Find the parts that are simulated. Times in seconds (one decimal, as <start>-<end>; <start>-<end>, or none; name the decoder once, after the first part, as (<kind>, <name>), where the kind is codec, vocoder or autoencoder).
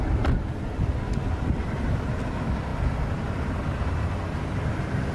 none